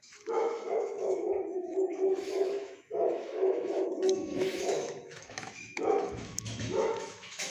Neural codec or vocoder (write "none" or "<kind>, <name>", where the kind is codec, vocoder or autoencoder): autoencoder, DAC-VAE